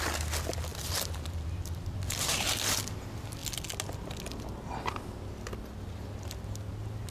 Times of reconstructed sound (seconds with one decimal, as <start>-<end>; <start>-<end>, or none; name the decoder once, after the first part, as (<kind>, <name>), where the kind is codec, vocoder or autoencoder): none